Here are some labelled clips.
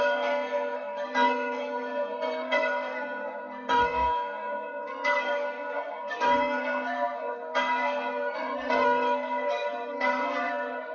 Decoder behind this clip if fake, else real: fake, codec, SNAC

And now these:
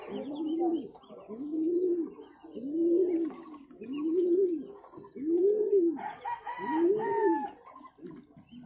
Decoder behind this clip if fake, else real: real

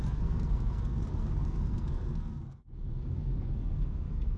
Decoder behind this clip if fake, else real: fake, codec, SNAC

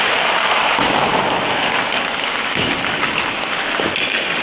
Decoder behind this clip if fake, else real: real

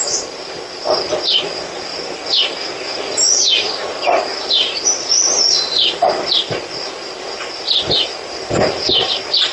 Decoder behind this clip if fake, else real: real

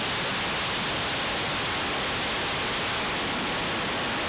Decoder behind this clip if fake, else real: real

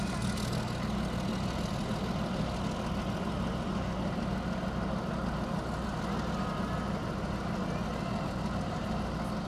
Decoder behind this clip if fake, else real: real